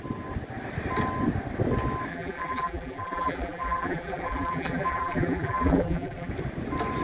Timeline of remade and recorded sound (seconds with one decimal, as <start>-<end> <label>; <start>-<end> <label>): 0.0-2.1 recorded; 2.1-6.3 remade; 6.3-7.0 recorded